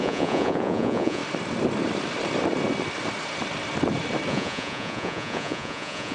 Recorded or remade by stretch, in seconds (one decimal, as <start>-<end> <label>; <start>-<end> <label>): 0.0-1.2 remade; 1.2-4.3 recorded; 4.3-6.1 remade